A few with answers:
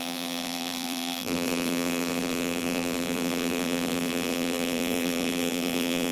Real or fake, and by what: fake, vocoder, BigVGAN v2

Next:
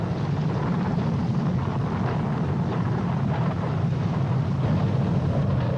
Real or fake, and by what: real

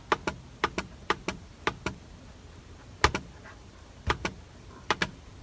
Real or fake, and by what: real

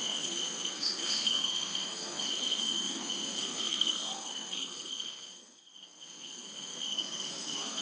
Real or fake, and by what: fake, codec, SNAC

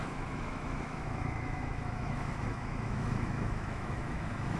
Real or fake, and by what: fake, autoencoder, DAC-VAE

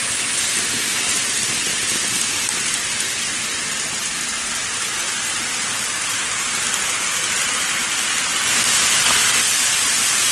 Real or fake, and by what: real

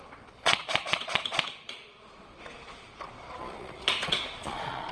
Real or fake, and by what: fake, vocoder, Vocos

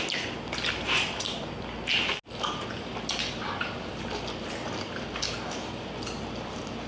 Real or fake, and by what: real